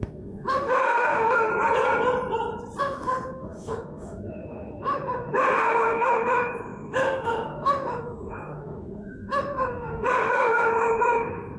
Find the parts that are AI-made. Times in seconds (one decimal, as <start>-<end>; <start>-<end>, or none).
0.0-1.5; 2.8-11.6